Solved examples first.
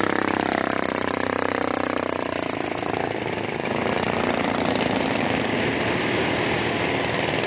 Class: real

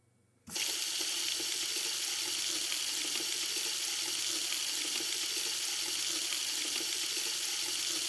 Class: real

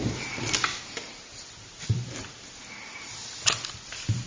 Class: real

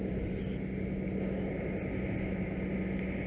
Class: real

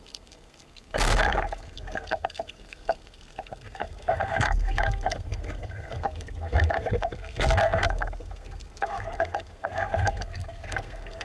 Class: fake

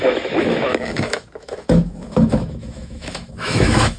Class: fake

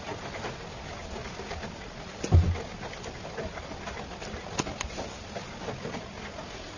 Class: real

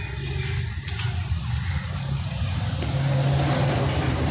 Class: real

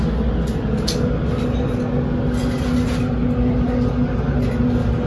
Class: real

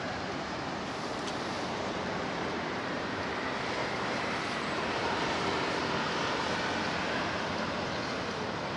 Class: fake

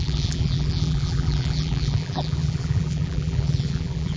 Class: fake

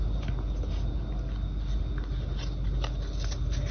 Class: real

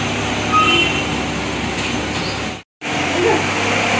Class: real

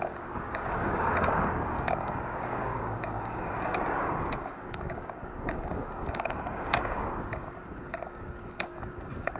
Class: fake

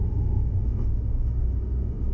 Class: fake